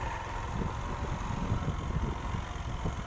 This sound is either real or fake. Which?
real